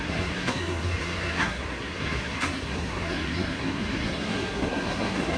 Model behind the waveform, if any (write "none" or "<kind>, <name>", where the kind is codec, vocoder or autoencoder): codec, SNAC